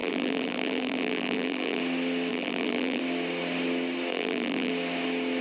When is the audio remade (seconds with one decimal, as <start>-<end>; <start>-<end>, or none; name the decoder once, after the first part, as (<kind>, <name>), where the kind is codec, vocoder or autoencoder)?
0.0-1.8 (vocoder, BigVGAN v2); 2.3-3.0; 4.1-4.7